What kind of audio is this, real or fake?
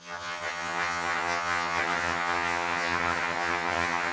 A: fake